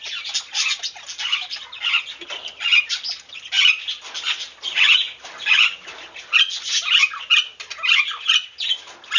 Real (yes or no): yes